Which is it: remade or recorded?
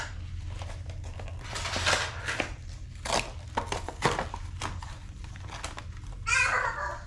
recorded